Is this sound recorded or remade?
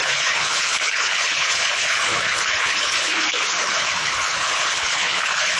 remade